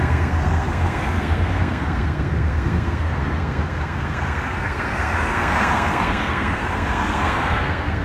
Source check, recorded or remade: remade